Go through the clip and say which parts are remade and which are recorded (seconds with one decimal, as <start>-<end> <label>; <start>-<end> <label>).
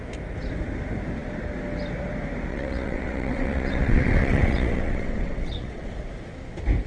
0.0-2.5 recorded; 2.5-5.9 remade; 5.9-6.9 recorded